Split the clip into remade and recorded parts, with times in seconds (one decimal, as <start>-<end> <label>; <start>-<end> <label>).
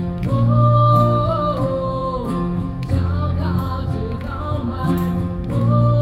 0.0-6.0 remade